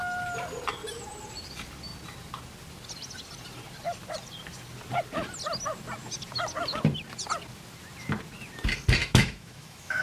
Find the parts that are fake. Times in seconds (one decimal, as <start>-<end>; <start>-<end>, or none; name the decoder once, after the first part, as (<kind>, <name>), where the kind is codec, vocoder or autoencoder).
9.0-10.0 (autoencoder, DAC-VAE)